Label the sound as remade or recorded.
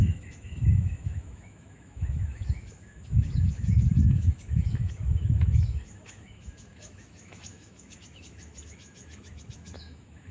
remade